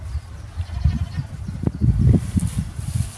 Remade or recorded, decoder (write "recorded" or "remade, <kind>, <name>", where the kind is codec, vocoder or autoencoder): remade, vocoder, BigVGAN v2